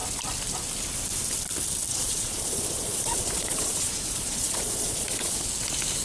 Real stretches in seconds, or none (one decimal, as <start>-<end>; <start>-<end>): 0.0-1.9; 5.5-6.0